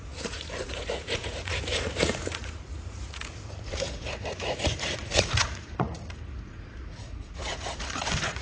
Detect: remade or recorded remade